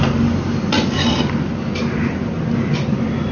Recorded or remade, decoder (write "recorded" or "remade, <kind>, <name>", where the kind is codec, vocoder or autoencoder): recorded